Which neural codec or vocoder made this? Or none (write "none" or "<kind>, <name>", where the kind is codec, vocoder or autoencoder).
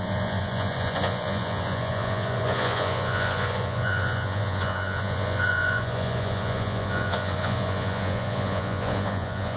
vocoder, Vocos